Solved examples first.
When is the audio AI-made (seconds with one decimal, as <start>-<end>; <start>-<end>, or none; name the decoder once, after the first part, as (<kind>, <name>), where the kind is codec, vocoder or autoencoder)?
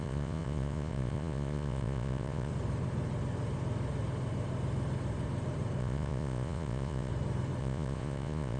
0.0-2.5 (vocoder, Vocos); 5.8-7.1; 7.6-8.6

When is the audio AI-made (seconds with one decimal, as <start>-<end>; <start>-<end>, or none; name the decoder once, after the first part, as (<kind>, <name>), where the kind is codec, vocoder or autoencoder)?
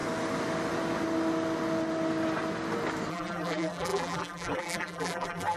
3.1-5.6 (vocoder, BigVGAN v2)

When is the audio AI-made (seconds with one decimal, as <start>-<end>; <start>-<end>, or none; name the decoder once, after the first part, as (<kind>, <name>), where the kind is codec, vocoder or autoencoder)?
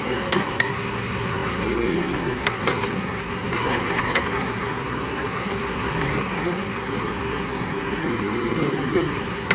0.0-9.5 (codec, SNAC)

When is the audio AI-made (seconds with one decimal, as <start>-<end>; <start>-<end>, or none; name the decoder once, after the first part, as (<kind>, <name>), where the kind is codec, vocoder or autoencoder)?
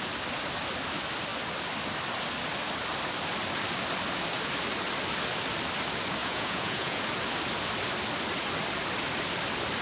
6.2-7.0 (vocoder, Vocos)